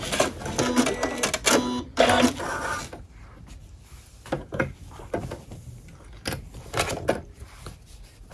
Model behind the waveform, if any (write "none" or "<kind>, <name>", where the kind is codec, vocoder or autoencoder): none